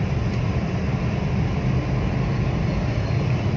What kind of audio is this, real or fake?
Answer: real